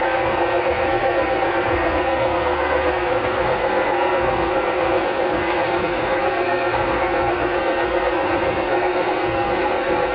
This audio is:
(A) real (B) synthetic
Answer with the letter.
B